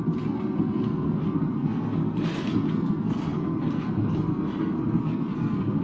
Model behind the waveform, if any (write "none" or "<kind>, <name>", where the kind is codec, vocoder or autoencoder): codec, SNAC